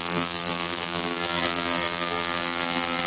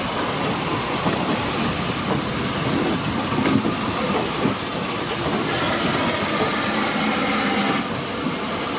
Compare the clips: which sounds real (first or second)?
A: second